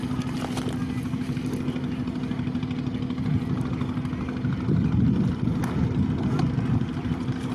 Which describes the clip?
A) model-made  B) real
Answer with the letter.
B